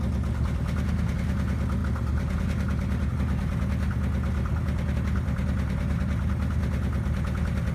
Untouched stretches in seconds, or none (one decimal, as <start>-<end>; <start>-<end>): 0.0-7.7